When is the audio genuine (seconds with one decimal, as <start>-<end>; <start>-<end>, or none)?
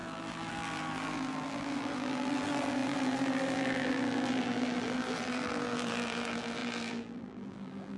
none